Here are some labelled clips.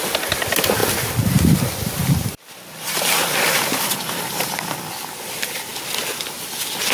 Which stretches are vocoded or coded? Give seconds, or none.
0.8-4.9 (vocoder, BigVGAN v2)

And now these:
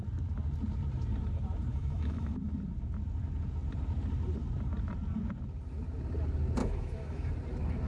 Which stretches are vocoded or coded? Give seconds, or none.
1.7-2.3 (autoencoder, DAC-VAE); 6.6-7.3